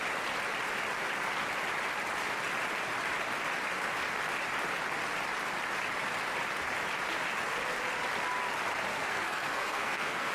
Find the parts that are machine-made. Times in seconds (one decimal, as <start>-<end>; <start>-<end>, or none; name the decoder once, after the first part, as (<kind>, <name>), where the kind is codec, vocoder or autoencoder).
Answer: 8.9-10.3 (codec, SNAC)